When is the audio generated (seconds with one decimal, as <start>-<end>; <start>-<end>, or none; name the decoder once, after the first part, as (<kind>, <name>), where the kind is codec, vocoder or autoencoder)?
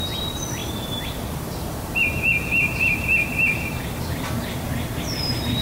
0.6-4.0 (vocoder, BigVGAN v2)